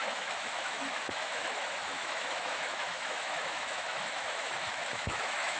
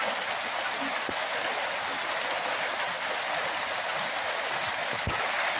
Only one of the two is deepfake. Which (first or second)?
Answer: first